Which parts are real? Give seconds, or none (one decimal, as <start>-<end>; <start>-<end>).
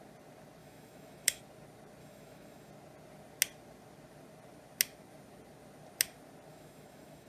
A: 0.0-0.6; 1.4-2.0; 2.7-6.5